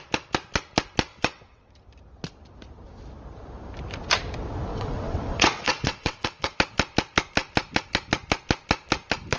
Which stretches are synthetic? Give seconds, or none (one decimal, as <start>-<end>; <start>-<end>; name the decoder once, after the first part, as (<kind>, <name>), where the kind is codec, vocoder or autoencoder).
1.1-1.7 (vocoder, WaveNeXt); 4.7-6.6